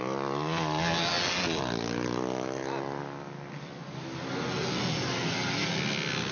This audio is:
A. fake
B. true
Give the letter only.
B